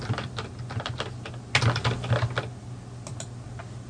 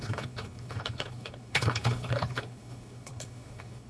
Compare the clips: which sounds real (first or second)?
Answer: first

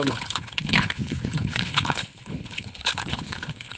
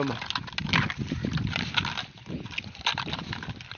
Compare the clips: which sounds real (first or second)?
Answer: second